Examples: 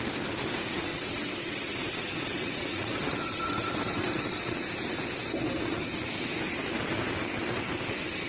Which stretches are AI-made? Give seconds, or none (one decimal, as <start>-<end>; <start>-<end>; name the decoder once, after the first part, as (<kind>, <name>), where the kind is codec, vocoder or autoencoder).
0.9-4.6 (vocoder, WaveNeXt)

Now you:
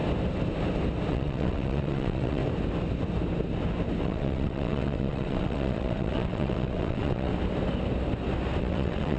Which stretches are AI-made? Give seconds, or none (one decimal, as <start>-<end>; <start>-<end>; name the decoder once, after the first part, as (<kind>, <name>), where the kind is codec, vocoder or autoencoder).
1.1-2.4 (vocoder, WaveNeXt); 4.0-7.3; 8.6-9.2

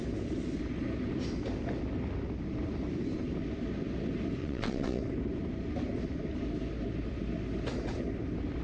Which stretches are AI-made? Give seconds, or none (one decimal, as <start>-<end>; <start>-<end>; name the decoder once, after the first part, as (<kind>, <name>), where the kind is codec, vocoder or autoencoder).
4.4-5.0 (vocoder, WaveNeXt)

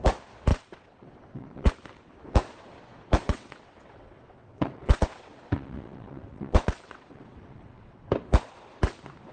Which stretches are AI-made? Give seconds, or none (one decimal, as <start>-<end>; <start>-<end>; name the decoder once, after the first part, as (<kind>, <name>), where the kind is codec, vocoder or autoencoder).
0.5-1.7 (vocoder, WaveNeXt); 3.2-8.1

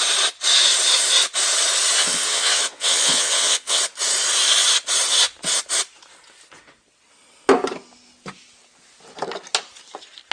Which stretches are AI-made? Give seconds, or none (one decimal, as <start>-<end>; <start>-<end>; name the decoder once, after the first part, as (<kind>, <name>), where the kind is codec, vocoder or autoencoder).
2.0-3.8 (vocoder, WaveNeXt)

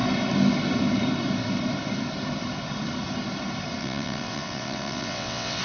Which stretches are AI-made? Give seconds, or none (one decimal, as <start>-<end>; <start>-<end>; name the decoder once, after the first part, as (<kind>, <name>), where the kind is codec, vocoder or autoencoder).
3.8-5.6 (vocoder, WaveNeXt)

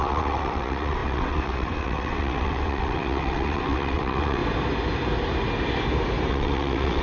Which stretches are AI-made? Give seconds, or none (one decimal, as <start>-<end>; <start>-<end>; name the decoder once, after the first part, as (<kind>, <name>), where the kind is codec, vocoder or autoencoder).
0.0-4.4 (vocoder, WaveNeXt); 6.3-7.0

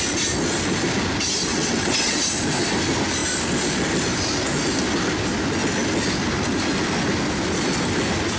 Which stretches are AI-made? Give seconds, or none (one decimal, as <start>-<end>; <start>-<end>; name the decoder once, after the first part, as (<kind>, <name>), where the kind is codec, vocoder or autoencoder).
1.5-2.2 (vocoder, WaveNeXt)